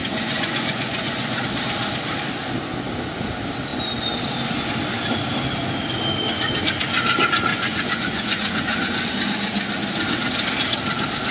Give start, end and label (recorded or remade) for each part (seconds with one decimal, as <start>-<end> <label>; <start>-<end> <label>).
0.0-1.4 remade; 1.4-7.5 recorded; 7.5-9.1 remade; 9.1-11.3 recorded